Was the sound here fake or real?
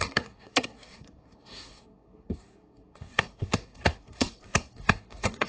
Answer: fake